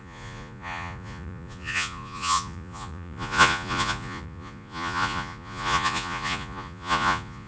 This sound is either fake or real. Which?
fake